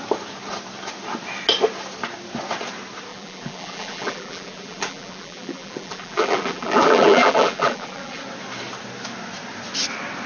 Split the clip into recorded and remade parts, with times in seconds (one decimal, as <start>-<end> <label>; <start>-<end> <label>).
0.0-3.1 recorded; 3.1-8.2 remade; 8.2-10.3 recorded